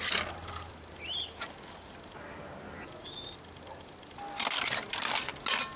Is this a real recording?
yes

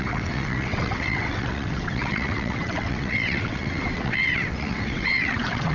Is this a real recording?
no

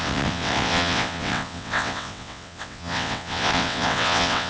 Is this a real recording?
no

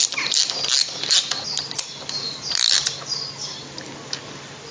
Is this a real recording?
yes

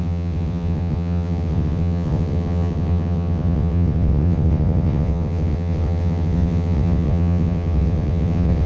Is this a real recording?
no